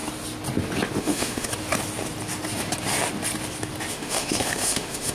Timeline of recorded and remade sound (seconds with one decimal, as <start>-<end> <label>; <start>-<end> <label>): 0.0-1.0 recorded; 1.0-1.5 remade; 1.5-3.9 recorded; 3.9-5.1 remade